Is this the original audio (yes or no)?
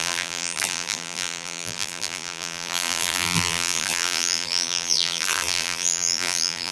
no